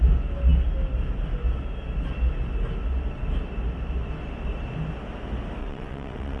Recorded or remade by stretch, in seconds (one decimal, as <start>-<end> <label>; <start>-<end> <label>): 0.0-5.6 recorded; 5.6-6.4 remade